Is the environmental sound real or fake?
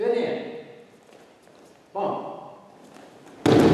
real